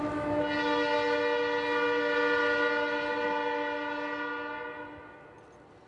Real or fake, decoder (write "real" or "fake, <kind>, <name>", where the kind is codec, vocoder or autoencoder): real